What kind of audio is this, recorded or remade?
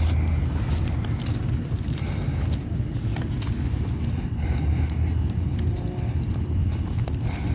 recorded